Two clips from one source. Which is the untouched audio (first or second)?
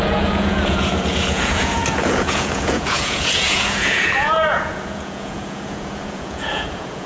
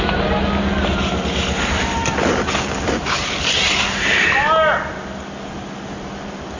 second